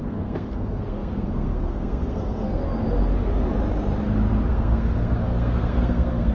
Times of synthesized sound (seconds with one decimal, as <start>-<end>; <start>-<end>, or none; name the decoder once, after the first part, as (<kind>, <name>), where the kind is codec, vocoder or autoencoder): 0.0-2.6 (codec, SNAC); 4.5-6.3

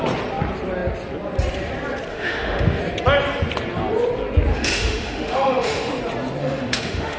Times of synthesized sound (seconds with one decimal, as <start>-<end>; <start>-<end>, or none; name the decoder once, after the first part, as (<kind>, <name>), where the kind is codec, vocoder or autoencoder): 2.1-2.8 (autoencoder, DAC-VAE); 4.5-6.0; 6.4-7.2

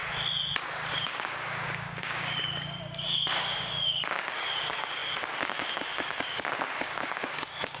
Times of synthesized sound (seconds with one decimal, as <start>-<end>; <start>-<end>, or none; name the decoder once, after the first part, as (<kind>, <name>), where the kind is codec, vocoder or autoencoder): 0.9-7.8 (codec, DAC)

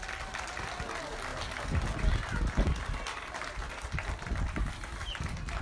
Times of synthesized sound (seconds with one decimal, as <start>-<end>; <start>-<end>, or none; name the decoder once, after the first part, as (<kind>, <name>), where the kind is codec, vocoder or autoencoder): none

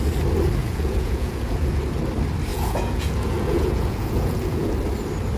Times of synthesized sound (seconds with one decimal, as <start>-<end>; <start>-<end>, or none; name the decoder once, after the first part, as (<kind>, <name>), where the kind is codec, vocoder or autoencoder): 0.6-1.8 (vocoder, Vocos); 2.5-4.7

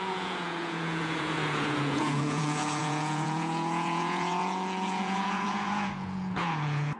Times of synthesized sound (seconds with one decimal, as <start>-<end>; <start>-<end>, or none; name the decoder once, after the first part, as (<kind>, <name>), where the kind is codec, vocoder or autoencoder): 0.0-7.0 (vocoder, Vocos)